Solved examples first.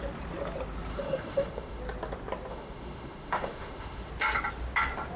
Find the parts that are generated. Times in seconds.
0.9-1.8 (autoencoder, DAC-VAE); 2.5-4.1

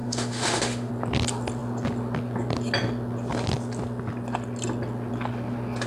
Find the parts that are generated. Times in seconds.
0.0-0.9 (autoencoder, DAC-VAE)

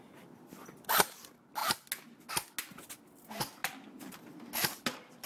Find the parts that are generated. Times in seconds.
none

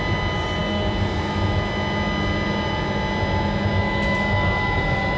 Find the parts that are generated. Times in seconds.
none